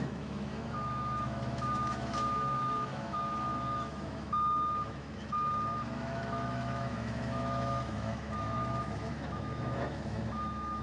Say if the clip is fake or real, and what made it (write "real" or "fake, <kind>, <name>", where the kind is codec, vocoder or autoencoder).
fake, autoencoder, DAC-VAE